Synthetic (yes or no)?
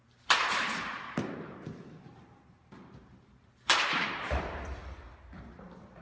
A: yes